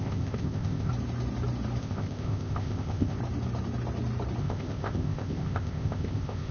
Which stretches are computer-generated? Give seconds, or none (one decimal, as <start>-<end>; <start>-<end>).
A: 0.0-0.9; 1.8-3.2; 4.4-6.5